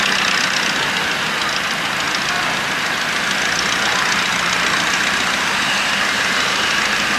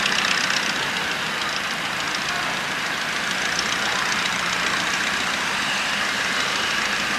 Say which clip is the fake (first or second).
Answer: second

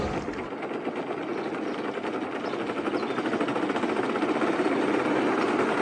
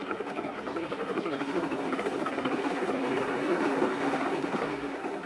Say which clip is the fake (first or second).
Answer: second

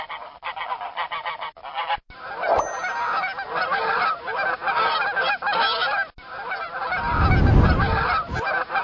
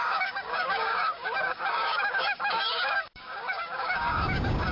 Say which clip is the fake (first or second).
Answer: second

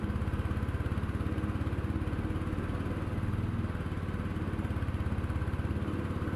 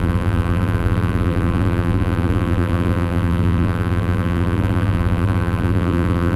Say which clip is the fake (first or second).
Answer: second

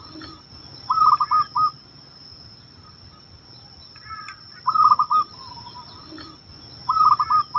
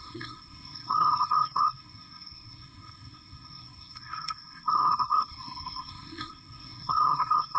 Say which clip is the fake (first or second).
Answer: second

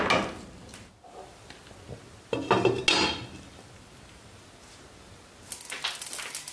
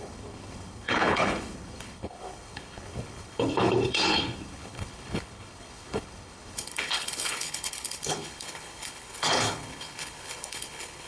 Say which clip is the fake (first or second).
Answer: second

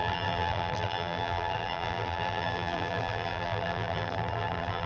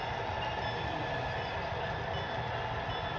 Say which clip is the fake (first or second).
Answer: first